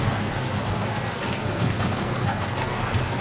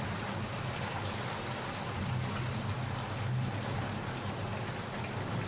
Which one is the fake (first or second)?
first